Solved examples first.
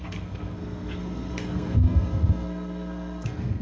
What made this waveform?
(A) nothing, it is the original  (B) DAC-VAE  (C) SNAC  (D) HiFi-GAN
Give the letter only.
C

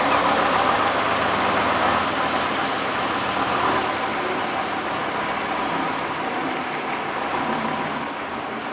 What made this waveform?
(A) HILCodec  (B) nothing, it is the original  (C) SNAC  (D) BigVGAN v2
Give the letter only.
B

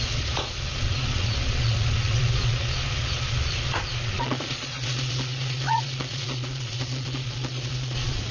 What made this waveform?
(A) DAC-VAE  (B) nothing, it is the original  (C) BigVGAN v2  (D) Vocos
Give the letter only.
D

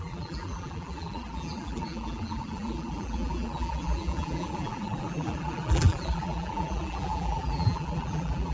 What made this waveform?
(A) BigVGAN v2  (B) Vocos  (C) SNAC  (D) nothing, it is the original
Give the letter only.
A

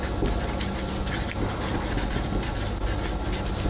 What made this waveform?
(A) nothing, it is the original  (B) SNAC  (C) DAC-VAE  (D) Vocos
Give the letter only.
A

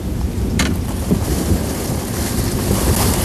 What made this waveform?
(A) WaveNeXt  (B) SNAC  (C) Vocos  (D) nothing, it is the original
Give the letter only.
D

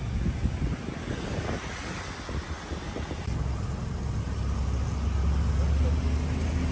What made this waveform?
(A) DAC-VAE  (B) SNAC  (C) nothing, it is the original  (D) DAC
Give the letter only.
C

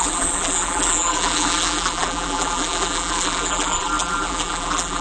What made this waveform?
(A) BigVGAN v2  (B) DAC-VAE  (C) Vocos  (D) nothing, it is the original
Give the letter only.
A